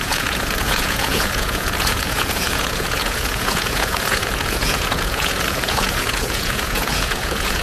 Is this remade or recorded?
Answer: remade